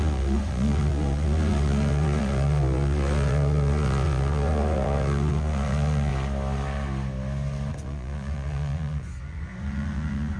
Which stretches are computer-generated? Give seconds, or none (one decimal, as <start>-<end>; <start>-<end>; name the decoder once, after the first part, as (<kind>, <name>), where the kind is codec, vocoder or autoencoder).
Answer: 0.0-6.1 (vocoder, Vocos); 7.7-10.4